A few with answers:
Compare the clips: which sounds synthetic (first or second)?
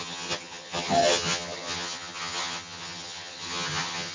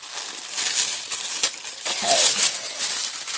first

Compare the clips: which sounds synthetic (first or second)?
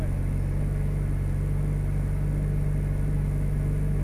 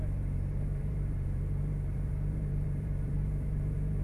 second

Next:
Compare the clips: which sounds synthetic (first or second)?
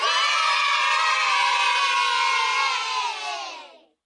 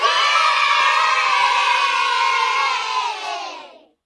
second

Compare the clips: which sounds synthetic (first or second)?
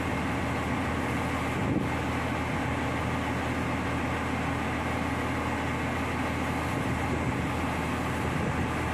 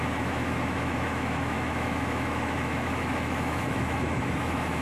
second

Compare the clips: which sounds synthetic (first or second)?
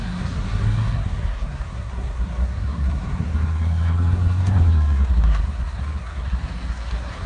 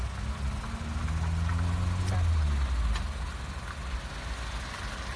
first